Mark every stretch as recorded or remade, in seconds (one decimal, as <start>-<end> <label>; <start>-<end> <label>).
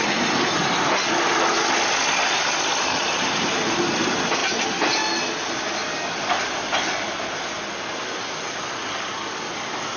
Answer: 0.0-10.0 recorded